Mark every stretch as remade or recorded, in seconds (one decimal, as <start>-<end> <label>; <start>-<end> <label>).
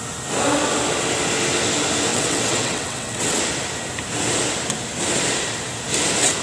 0.0-2.1 recorded; 2.1-3.4 remade; 3.4-6.4 recorded